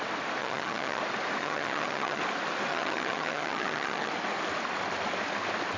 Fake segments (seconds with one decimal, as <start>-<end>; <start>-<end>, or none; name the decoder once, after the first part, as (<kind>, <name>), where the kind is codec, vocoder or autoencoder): 0.4-1.0 (vocoder, HiFi-GAN); 1.4-2.2; 2.7-4.1